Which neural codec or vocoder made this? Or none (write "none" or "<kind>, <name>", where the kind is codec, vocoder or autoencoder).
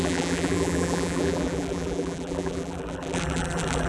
vocoder, BigVGAN v2